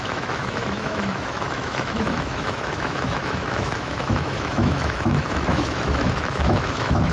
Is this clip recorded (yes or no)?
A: no